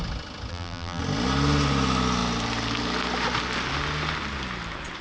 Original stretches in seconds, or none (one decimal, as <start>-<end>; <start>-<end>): 0.0-0.5; 1.0-5.0